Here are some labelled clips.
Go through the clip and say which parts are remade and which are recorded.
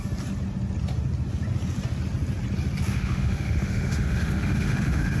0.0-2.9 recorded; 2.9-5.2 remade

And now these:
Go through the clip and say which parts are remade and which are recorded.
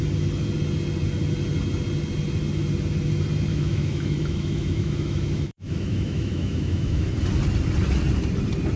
0.0-3.5 recorded; 3.5-7.1 remade; 7.1-8.8 recorded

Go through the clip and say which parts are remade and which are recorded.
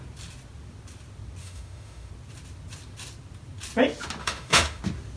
0.0-1.4 recorded; 1.4-2.1 remade; 2.1-4.2 recorded; 4.2-4.8 remade; 4.8-5.2 recorded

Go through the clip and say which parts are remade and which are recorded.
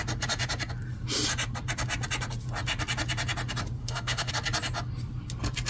0.0-3.8 recorded; 3.8-4.3 remade; 4.3-5.7 recorded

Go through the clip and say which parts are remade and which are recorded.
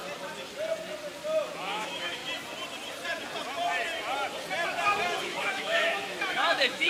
0.0-1.6 recorded; 1.6-2.2 remade; 2.2-5.2 recorded; 5.2-6.9 remade